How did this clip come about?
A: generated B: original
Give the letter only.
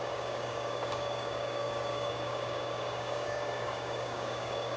A